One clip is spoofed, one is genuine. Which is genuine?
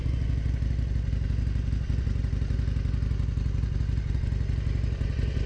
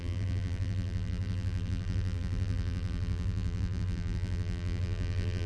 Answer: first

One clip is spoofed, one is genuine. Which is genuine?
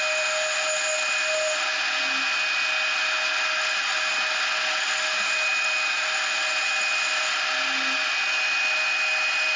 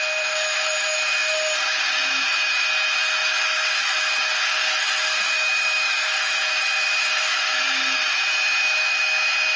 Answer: first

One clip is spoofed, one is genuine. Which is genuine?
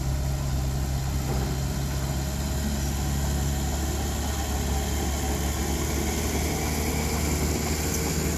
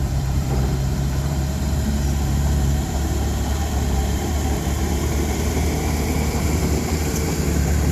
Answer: first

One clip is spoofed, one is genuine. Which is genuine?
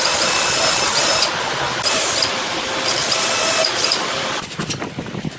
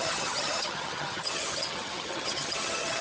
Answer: first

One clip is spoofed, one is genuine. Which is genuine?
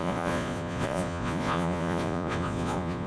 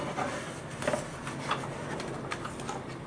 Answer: second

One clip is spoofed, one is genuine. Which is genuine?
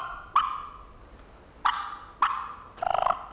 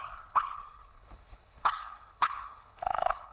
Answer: first